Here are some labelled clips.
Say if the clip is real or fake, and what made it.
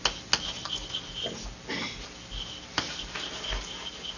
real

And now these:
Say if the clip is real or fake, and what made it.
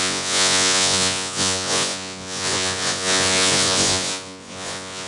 fake, vocoder, Vocos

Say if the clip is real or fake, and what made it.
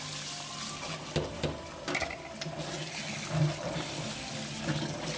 real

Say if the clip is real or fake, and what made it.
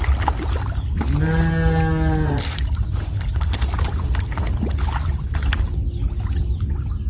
real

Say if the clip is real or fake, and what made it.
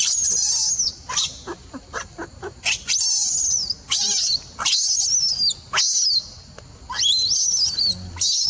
real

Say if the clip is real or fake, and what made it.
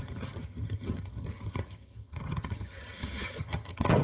fake, vocoder, HiFi-GAN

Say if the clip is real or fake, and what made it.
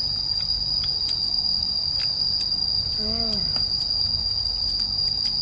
real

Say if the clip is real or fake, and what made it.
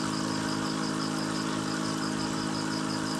real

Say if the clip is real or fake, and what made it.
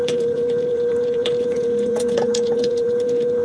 fake, vocoder, Vocos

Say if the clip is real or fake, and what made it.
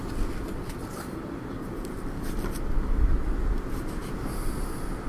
real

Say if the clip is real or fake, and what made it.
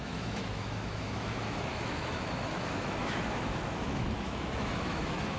fake, autoencoder, DAC-VAE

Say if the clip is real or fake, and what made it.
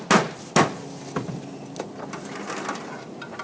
real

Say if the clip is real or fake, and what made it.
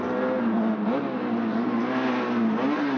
real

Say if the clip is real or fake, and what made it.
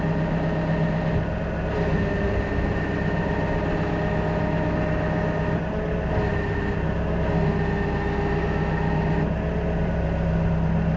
real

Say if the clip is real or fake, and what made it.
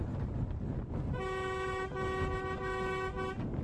real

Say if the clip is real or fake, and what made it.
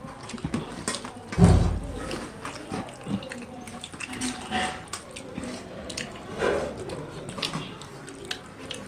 real